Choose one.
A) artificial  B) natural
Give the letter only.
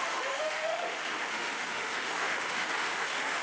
A